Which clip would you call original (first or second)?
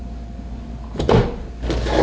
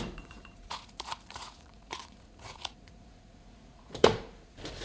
first